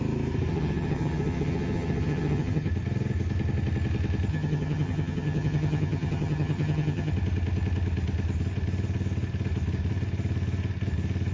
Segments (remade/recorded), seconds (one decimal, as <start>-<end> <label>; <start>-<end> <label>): 0.0-0.5 recorded; 0.5-2.7 remade; 2.7-4.3 recorded; 4.3-7.1 remade; 7.1-11.3 recorded